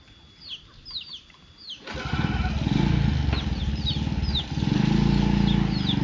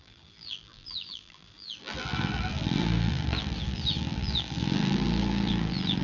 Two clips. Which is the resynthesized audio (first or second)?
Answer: second